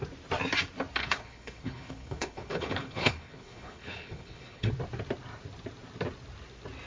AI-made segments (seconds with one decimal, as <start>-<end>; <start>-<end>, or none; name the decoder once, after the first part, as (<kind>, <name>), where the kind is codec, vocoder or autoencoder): 1.0-4.7 (codec, HILCodec)

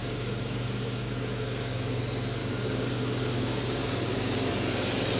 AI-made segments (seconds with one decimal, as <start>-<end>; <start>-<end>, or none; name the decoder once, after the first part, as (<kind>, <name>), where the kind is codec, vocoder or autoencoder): 0.0-2.0 (codec, DAC); 2.4-4.5

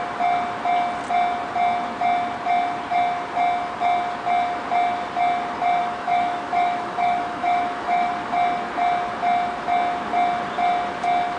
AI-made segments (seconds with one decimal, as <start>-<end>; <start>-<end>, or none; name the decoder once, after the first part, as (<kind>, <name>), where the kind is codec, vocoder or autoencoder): 5.8-8.1 (autoencoder, DAC-VAE)

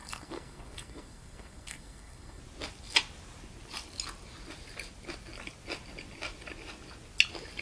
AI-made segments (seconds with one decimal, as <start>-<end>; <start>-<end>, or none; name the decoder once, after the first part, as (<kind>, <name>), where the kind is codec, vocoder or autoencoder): 0.0-2.4 (codec, SNAC)